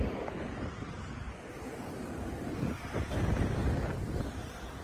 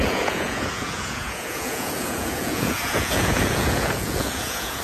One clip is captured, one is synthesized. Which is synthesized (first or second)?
second